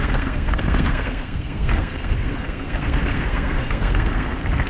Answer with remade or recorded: remade